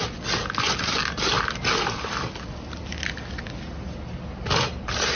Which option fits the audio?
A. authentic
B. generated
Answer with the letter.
A